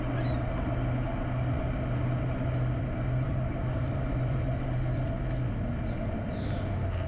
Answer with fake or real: real